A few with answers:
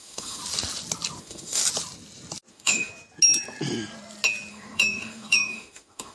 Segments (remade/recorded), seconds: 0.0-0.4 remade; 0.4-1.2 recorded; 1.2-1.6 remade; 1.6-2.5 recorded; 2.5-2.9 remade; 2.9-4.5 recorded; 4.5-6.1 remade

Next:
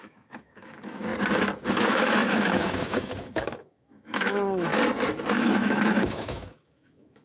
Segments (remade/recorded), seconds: 0.0-1.1 remade; 1.1-1.7 recorded; 1.7-4.7 remade; 4.7-5.3 recorded; 5.3-7.2 remade

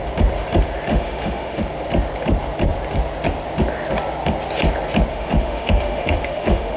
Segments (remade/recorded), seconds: 0.0-0.9 recorded; 0.9-1.6 remade; 1.6-5.1 recorded; 5.1-6.8 remade